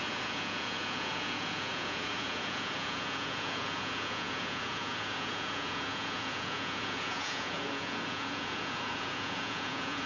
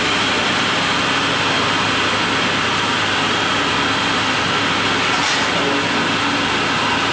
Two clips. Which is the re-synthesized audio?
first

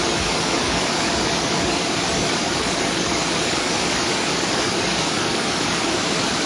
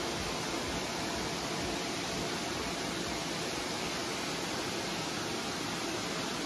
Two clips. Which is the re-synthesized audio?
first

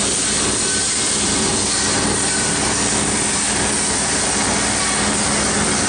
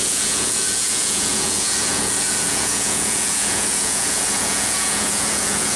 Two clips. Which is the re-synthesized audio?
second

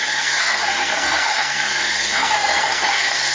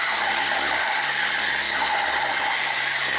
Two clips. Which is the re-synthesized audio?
first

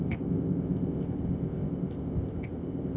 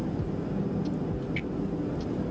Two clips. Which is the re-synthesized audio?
first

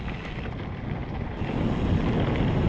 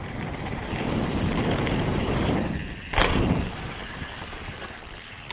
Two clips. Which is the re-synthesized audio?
second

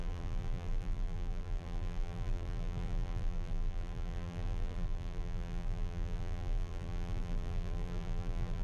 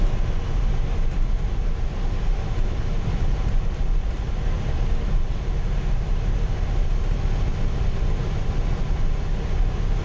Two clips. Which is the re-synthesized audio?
first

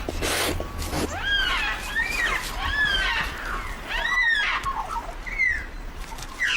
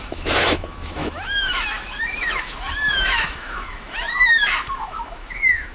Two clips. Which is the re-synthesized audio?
second